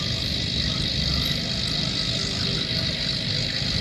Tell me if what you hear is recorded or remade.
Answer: recorded